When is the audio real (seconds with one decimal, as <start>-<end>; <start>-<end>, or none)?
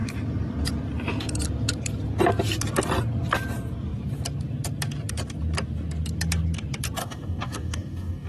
0.0-7.0